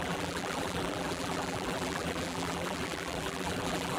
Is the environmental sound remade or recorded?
remade